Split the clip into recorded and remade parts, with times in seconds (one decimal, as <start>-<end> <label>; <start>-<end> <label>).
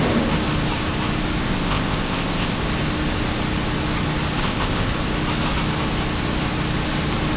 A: 0.0-1.4 recorded; 1.4-2.6 remade; 2.6-4.4 recorded; 4.4-4.9 remade; 4.9-7.4 recorded